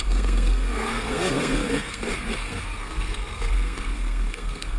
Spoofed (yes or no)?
yes